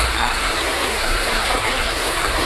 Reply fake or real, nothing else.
fake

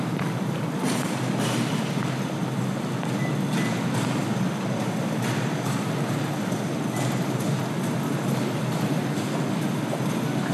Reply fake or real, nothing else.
real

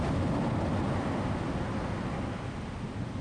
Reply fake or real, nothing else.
real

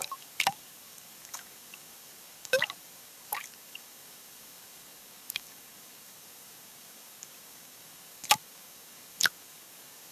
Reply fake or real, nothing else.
fake